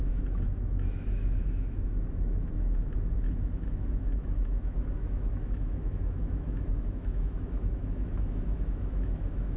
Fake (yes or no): yes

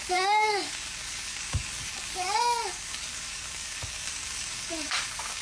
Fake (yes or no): yes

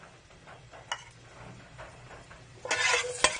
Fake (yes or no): no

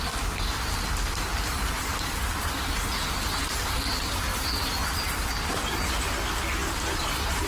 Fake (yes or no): no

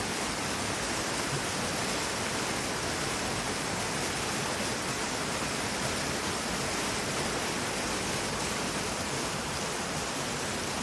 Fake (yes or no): no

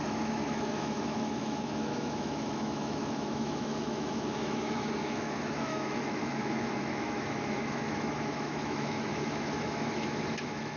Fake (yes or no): yes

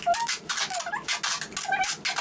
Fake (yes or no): no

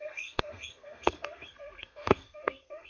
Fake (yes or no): yes